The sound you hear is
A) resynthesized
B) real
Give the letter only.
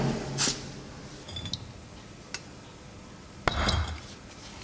B